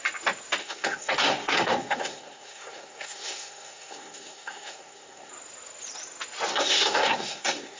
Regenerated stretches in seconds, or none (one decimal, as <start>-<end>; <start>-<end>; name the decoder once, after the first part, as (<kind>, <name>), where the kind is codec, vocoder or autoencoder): 0.6-5.3 (codec, SNAC); 6.5-7.8